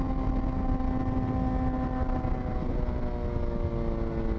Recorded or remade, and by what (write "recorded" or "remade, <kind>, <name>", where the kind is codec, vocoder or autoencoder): recorded